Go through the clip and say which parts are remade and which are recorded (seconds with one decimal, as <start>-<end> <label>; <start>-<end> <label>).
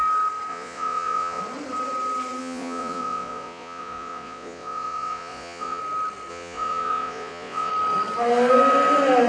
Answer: 0.0-0.5 recorded; 0.5-1.4 remade; 1.4-2.4 recorded; 2.4-5.8 remade; 5.8-6.3 recorded; 6.3-7.7 remade; 7.7-9.3 recorded